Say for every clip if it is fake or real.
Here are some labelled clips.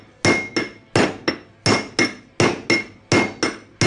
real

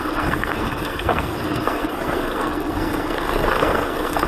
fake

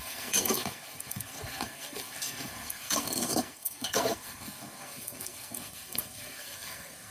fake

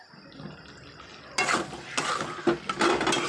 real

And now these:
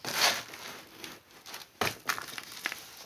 real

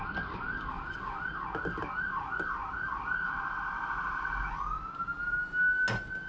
real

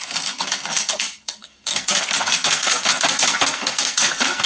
fake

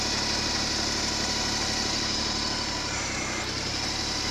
real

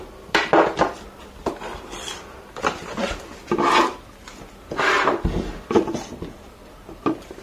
real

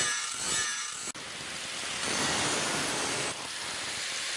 real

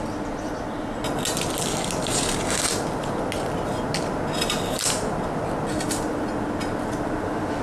real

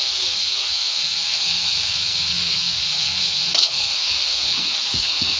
fake